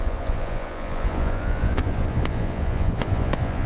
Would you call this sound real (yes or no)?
no